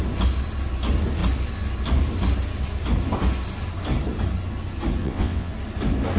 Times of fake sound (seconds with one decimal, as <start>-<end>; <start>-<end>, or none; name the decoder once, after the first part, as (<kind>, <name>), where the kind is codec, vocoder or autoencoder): 5.0-5.5 (vocoder, WaveNeXt)